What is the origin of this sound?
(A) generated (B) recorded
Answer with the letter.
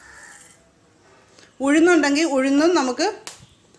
B